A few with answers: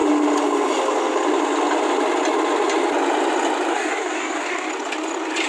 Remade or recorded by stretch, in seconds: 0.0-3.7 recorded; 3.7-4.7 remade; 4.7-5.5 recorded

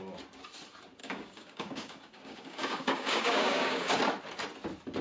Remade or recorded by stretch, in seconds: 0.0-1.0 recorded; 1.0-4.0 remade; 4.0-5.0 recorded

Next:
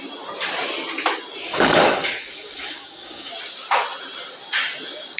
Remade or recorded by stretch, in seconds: 0.0-1.4 recorded; 1.4-3.3 remade; 3.3-5.2 recorded